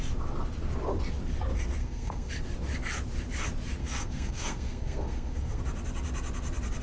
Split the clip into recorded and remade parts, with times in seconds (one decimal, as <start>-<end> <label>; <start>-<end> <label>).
0.0-1.8 recorded; 1.8-2.3 remade; 2.3-3.8 recorded; 3.8-5.6 remade; 5.6-6.8 recorded

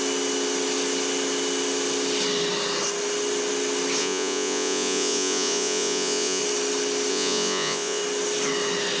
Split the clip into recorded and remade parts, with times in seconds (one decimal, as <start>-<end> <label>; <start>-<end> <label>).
0.0-4.0 recorded; 4.0-6.4 remade; 6.4-7.1 recorded; 7.1-8.0 remade; 8.0-9.0 recorded